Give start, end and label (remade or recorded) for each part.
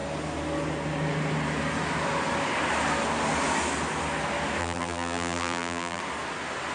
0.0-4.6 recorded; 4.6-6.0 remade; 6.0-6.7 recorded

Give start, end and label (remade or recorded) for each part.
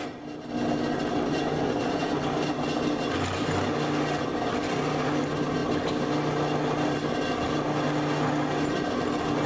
0.0-9.5 recorded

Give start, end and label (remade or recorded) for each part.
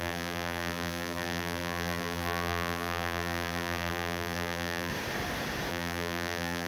0.0-4.9 remade; 4.9-5.7 recorded; 5.7-6.7 remade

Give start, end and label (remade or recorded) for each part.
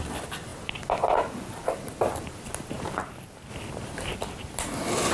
0.0-0.5 remade; 0.5-1.4 recorded; 1.4-3.0 remade; 3.0-3.5 recorded; 3.5-4.1 remade; 4.1-5.1 recorded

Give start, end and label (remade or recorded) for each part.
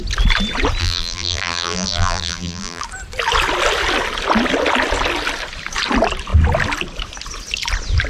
0.0-0.8 recorded; 0.8-2.8 remade; 2.8-8.1 recorded